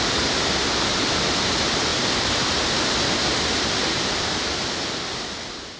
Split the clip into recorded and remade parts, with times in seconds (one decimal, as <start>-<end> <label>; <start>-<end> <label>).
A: 0.0-5.8 recorded